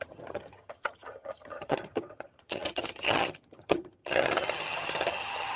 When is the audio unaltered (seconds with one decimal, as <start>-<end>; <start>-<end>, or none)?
none